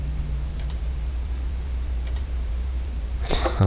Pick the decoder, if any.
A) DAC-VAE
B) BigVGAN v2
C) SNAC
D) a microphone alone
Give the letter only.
B